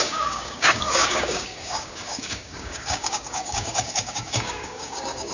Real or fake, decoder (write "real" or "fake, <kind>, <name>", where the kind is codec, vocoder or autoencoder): fake, codec, DAC